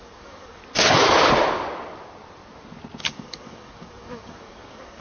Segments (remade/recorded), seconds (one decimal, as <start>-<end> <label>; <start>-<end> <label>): 0.0-0.6 remade; 0.6-3.0 recorded; 3.0-5.0 remade